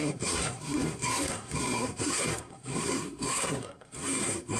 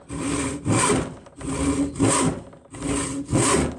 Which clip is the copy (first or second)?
first